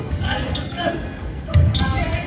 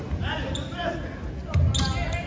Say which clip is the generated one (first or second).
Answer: first